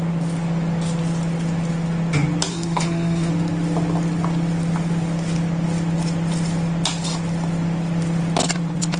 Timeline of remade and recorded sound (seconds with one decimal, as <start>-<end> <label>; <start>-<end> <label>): 0.0-2.5 recorded; 2.5-3.3 remade; 3.3-9.0 recorded